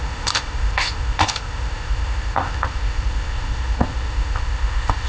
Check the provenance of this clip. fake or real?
fake